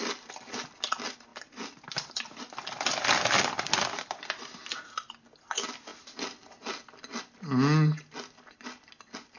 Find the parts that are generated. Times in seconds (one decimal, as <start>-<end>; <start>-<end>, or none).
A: none